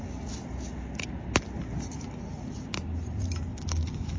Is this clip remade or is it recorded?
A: recorded